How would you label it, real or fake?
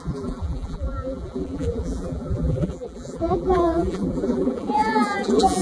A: fake